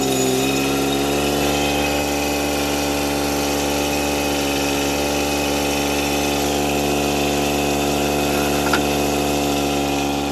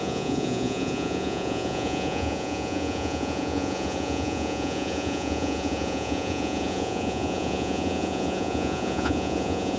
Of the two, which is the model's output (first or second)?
second